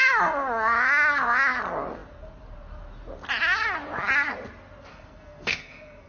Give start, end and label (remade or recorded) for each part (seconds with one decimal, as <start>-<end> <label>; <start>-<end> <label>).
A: 0.0-4.9 recorded; 4.9-6.1 remade